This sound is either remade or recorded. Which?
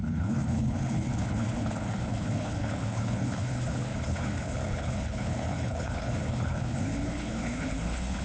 remade